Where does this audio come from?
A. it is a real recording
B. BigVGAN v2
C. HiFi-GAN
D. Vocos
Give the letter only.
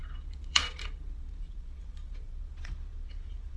D